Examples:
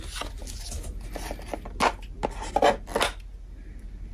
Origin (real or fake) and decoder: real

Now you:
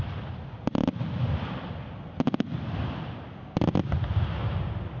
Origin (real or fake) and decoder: real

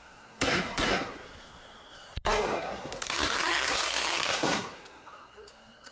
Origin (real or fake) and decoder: fake, codec, SNAC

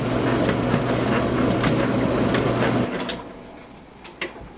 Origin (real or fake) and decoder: real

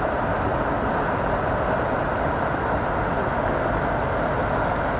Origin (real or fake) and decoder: real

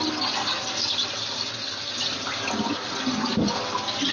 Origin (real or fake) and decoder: real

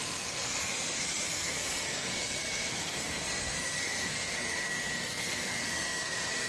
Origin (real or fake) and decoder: fake, codec, SNAC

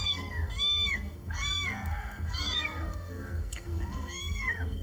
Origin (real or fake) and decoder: fake, codec, SNAC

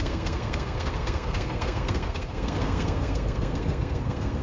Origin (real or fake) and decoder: fake, codec, SNAC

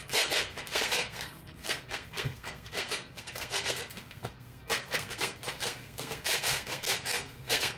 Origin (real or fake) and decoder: fake, codec, SNAC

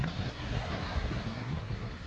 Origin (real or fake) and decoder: fake, codec, SNAC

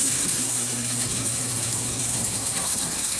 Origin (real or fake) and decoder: fake, codec, SNAC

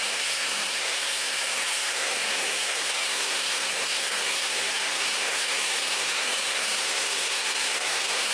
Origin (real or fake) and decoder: fake, codec, SNAC